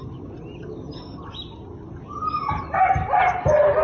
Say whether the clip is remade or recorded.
recorded